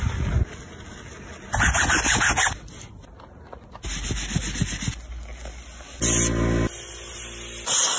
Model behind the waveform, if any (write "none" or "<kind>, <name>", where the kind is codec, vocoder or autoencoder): none